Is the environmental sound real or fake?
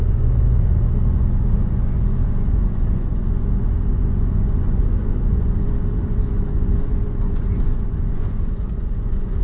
fake